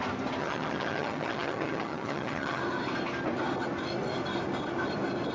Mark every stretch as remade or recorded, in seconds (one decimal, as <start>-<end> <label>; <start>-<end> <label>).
0.0-0.4 recorded; 0.4-2.6 remade; 2.6-5.3 recorded